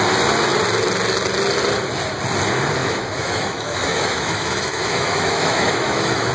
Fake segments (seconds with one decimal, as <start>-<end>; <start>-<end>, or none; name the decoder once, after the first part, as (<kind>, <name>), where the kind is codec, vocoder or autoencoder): 2.8-6.3 (autoencoder, DAC-VAE)